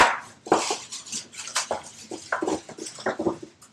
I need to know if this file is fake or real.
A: fake